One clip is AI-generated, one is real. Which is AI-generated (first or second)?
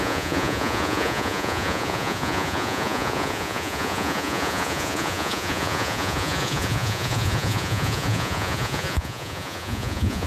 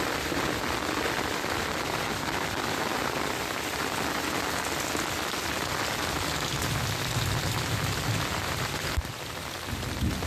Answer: first